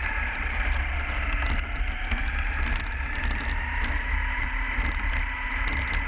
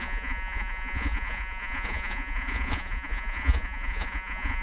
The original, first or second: first